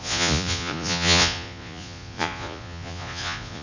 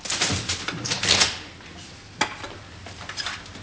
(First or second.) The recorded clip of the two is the second